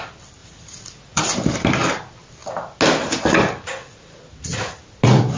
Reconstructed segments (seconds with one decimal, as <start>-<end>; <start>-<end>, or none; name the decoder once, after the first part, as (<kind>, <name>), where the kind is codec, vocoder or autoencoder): 0.4-1.2 (vocoder, Vocos); 3.8-4.8